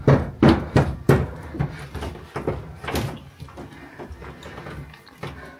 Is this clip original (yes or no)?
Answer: yes